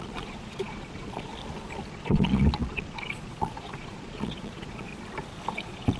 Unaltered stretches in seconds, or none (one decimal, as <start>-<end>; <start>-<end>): 1.3-1.9; 4.9-5.5